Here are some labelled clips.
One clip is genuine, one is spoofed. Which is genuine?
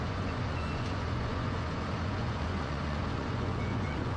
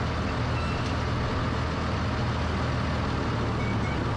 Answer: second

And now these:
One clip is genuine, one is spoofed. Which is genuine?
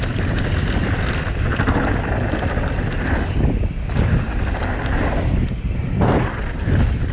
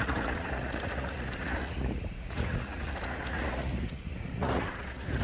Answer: first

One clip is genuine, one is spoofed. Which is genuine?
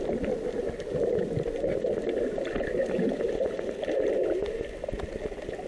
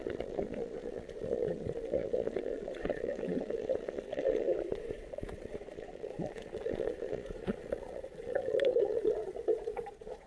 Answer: first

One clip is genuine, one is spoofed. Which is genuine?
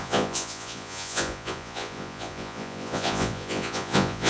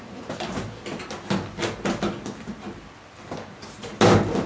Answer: second